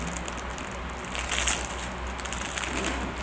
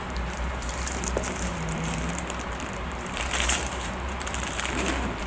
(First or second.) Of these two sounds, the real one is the first